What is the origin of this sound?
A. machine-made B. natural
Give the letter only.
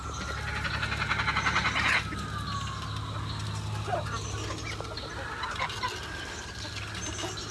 B